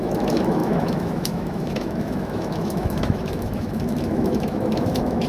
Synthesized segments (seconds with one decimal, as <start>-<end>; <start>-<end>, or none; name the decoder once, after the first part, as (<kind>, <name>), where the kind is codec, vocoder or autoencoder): 0.0-5.3 (autoencoder, DAC-VAE)